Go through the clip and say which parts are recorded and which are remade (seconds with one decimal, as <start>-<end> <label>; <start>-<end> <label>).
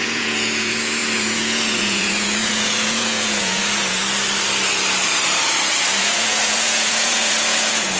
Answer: 0.0-4.0 remade; 4.0-6.0 recorded; 6.0-8.0 remade